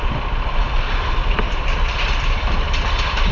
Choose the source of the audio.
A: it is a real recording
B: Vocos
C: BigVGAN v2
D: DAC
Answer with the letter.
C